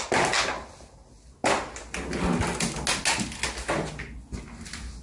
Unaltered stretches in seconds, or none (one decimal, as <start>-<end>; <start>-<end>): 0.0-5.0